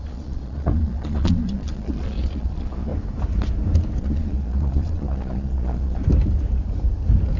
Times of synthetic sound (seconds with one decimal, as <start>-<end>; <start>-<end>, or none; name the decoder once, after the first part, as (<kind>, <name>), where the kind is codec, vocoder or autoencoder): 0.0-2.9 (vocoder, Vocos); 4.0-6.0